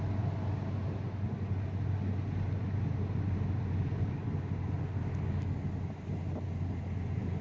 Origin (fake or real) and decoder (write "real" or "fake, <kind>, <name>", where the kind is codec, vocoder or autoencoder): real